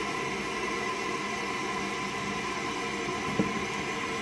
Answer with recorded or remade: recorded